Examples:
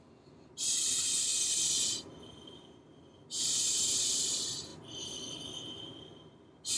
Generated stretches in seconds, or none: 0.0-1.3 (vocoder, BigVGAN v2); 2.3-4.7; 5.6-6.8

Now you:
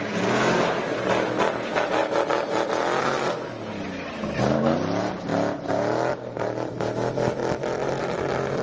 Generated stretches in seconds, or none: none